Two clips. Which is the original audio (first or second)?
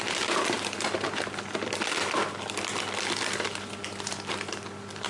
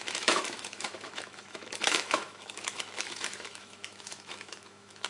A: first